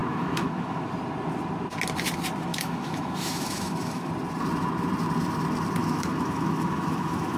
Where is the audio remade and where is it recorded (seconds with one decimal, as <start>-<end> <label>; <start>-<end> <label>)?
0.0-0.9 remade; 0.9-2.5 recorded; 2.5-4.1 remade; 4.1-5.8 recorded; 5.8-7.4 remade